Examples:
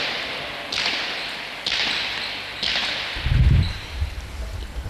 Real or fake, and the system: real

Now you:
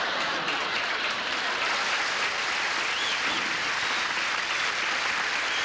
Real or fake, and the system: real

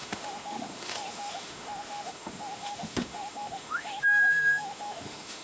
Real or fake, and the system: fake, autoencoder, DAC-VAE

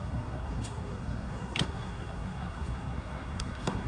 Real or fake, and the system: fake, codec, SNAC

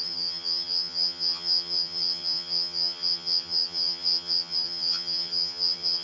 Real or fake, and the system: fake, vocoder, HiFi-GAN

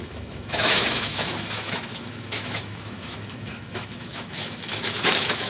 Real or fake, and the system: fake, autoencoder, DAC-VAE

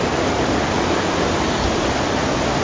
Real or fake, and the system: real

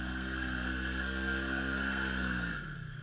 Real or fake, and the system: fake, codec, SNAC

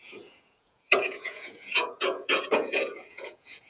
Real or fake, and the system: fake, vocoder, Vocos